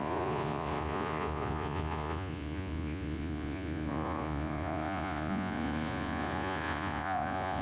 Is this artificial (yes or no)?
yes